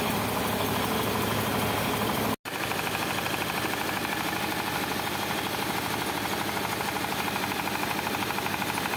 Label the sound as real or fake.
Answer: real